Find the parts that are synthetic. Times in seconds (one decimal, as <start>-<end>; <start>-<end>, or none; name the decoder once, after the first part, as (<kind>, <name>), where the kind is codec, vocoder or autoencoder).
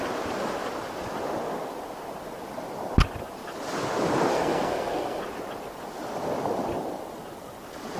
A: 4.3-5.2 (codec, SNAC)